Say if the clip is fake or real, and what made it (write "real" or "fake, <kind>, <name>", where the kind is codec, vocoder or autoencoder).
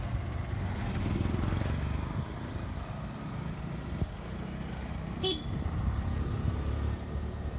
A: real